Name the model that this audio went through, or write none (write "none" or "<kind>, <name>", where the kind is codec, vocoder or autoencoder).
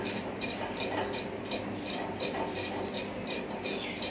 none